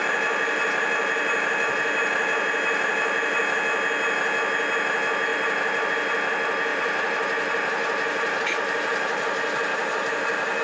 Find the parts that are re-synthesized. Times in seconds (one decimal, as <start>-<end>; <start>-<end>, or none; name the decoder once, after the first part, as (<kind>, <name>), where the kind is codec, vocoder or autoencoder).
0.0-3.4 (vocoder, BigVGAN v2); 5.3-5.9; 6.7-10.6